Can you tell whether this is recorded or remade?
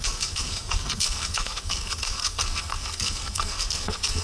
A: remade